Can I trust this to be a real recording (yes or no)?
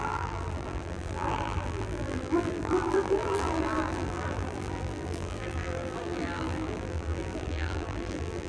no